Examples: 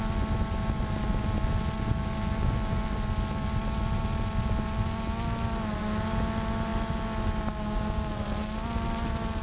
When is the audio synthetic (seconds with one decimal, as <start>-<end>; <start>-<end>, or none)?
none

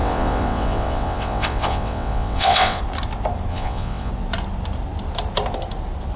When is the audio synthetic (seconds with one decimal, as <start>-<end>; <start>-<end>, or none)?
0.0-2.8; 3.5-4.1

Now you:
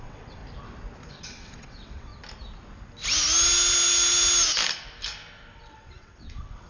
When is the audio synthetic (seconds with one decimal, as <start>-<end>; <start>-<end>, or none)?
0.0-0.4; 1.1-2.1; 5.6-6.7

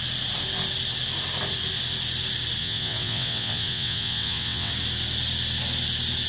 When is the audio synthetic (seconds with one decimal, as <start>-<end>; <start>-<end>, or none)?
2.6-4.7

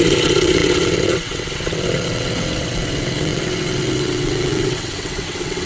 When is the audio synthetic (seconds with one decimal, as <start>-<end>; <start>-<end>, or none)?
0.0-5.7